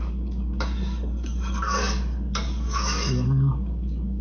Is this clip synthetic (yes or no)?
yes